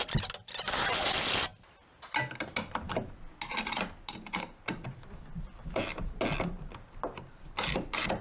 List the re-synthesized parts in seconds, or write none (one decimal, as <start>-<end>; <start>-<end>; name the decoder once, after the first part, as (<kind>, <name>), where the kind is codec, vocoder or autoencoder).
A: none